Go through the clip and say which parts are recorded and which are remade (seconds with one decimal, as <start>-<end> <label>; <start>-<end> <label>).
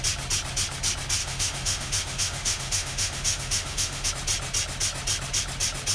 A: 0.0-1.2 recorded; 1.2-4.1 remade; 4.1-5.9 recorded